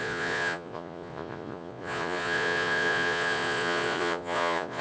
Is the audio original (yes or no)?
no